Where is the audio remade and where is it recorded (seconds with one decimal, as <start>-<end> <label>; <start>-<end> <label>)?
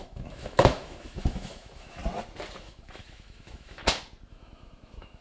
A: 0.0-2.0 remade; 2.0-2.6 recorded; 2.6-3.8 remade; 3.8-4.3 recorded; 4.3-5.2 remade